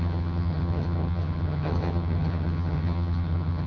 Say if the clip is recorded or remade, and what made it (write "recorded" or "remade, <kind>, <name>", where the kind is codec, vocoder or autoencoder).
remade, vocoder, HiFi-GAN